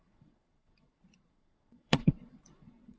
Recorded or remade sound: remade